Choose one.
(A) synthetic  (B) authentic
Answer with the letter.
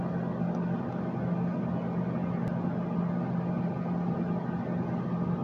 B